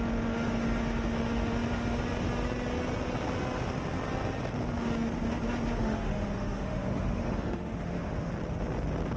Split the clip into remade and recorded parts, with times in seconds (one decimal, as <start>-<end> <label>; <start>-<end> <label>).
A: 0.0-5.8 recorded; 5.8-8.3 remade; 8.3-9.2 recorded